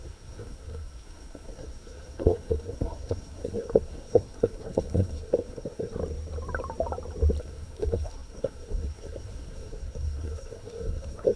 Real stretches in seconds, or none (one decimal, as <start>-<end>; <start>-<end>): 6.0-7.4